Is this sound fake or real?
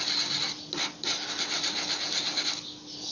real